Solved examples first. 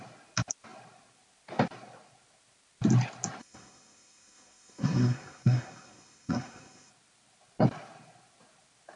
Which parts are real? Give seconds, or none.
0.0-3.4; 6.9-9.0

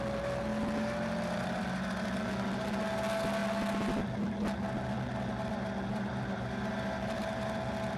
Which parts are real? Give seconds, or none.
0.0-8.0

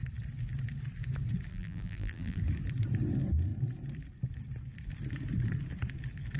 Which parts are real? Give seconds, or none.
0.0-1.5; 2.4-6.4

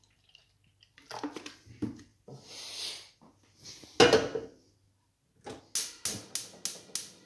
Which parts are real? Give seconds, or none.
0.0-7.3

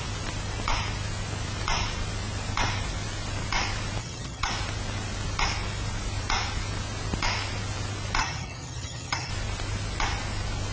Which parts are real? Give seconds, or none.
0.0-4.0; 4.5-8.2; 9.3-10.7